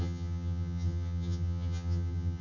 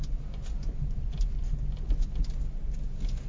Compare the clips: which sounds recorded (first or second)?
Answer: second